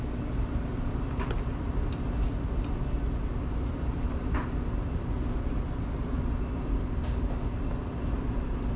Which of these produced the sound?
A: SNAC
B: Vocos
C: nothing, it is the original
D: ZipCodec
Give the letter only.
C